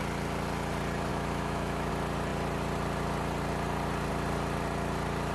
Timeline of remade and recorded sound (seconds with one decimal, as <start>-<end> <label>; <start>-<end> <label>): 0.0-1.1 recorded; 1.1-1.9 remade; 1.9-5.3 recorded